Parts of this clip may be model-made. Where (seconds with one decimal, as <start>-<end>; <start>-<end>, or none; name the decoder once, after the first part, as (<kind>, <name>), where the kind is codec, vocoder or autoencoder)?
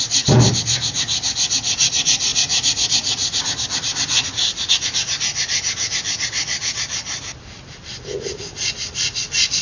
2.3-4.7 (vocoder, BigVGAN v2)